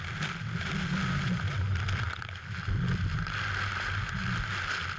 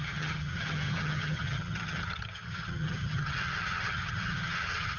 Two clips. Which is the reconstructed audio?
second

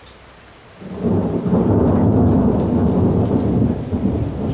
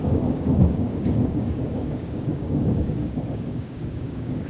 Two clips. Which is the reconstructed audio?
second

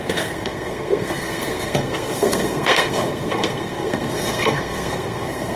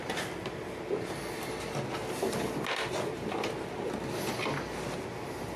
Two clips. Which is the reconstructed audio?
first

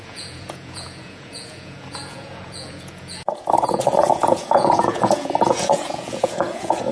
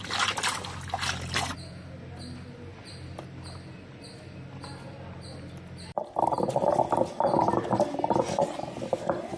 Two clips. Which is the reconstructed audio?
first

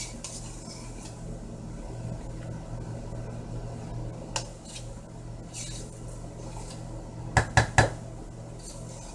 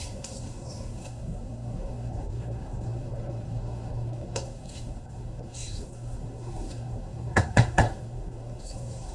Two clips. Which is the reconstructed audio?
second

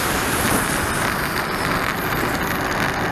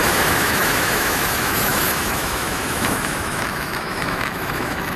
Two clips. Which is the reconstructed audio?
second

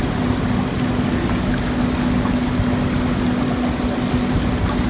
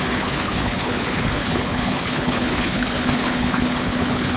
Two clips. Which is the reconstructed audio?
second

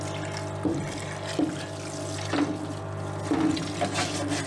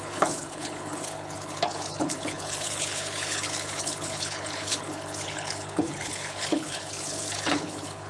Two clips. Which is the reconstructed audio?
second